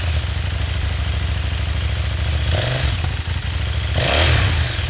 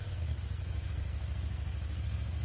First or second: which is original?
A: first